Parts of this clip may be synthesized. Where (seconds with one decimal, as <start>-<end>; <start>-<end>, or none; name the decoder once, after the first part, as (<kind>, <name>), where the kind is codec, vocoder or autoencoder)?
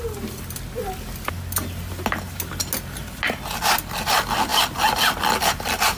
none